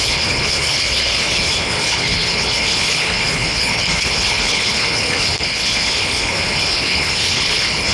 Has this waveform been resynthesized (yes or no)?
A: yes